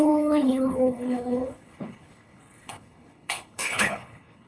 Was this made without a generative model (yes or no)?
no